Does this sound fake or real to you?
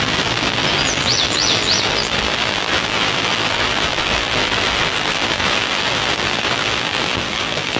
fake